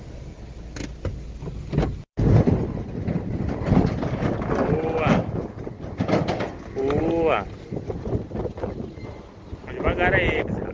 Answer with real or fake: real